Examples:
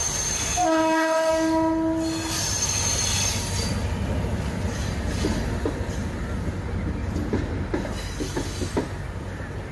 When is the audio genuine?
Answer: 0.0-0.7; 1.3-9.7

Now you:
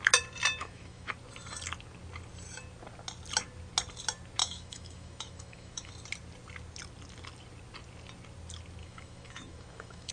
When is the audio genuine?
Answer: 0.0-0.6; 1.1-4.4; 5.9-8.8

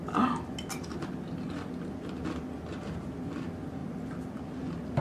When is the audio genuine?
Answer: 0.0-5.0

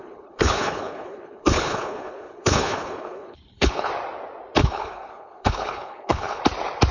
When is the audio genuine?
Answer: 3.9-4.6; 6.4-6.9

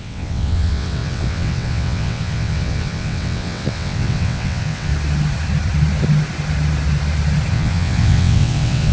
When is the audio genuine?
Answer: 4.9-7.5

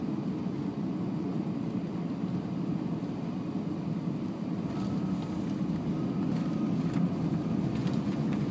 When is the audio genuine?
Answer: 0.0-0.4; 1.4-7.7